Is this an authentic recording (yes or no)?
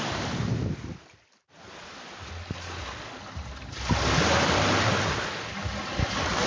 yes